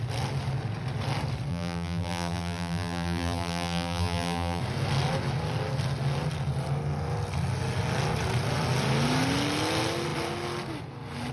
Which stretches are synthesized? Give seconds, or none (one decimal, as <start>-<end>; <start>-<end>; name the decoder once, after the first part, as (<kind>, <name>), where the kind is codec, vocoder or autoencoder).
1.5-4.6 (vocoder, BigVGAN v2)